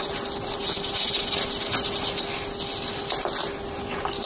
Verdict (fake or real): real